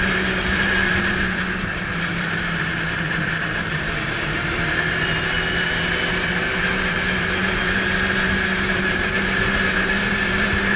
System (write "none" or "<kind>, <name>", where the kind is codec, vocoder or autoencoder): vocoder, BigVGAN v2